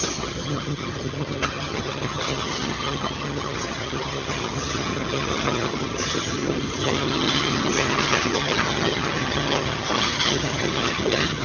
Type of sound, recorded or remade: remade